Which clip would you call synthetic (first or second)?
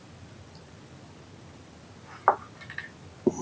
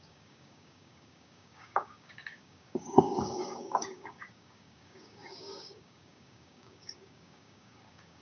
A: second